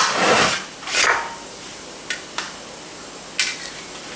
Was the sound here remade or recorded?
recorded